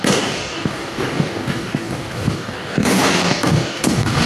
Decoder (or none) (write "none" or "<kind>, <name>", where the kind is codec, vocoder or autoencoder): codec, DAC